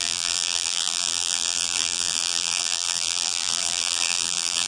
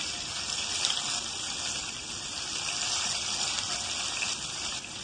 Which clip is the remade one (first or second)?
first